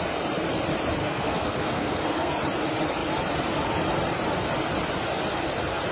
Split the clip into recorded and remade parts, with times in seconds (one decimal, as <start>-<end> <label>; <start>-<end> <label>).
0.0-1.0 recorded; 1.0-2.3 remade; 2.3-5.9 recorded